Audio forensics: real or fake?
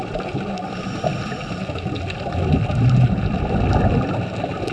real